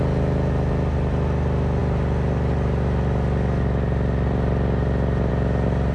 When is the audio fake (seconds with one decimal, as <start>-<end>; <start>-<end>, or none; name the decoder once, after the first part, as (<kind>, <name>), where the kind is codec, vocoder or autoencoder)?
none